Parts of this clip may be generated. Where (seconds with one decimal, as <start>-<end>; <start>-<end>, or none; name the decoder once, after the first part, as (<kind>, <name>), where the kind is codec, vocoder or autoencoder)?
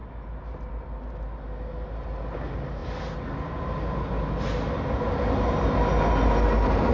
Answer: none